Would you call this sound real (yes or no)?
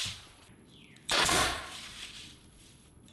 no